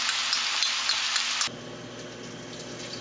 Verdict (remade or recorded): recorded